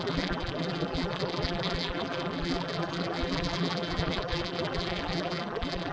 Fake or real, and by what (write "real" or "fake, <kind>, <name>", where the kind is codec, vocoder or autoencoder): fake, vocoder, BigVGAN v2